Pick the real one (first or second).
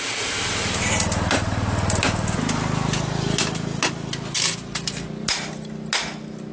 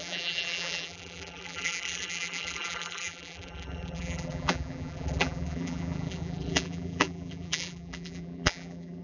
first